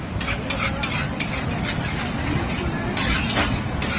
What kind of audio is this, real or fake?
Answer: real